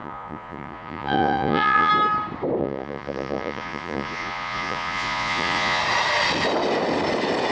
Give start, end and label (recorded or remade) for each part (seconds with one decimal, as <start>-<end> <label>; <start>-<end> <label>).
0.0-1.9 remade; 1.9-2.6 recorded; 2.6-5.8 remade; 5.8-7.5 recorded